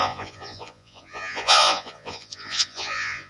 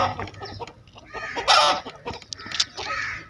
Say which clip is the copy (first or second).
first